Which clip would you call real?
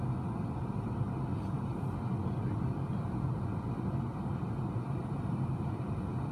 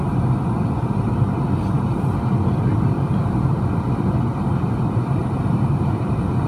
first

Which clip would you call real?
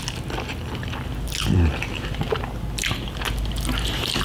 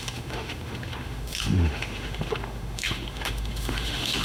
first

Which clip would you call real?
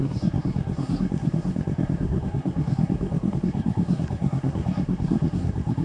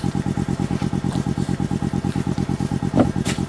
second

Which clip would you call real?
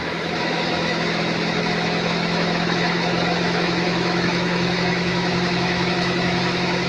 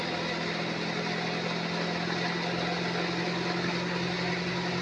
second